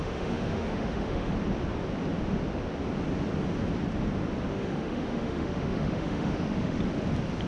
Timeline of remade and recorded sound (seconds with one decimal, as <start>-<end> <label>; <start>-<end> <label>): 0.0-1.3 remade; 1.3-4.5 recorded; 4.5-6.8 remade; 6.8-7.5 recorded